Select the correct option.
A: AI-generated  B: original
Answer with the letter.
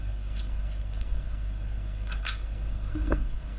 A